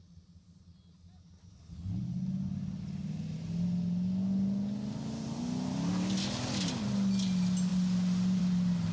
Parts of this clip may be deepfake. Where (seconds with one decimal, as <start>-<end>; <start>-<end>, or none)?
none